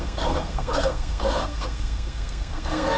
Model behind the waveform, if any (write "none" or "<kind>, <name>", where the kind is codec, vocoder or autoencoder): codec, SNAC